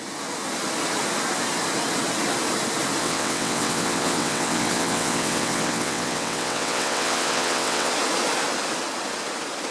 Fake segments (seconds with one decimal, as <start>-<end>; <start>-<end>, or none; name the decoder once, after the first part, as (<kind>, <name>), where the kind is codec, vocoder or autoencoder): 3.0-7.9 (vocoder, WaveNeXt)